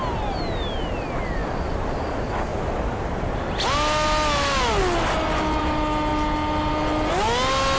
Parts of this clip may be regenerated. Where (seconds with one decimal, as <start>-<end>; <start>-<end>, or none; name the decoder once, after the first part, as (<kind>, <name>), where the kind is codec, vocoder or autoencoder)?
none